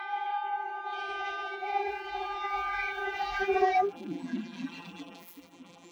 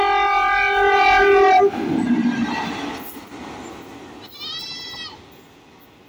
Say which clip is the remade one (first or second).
first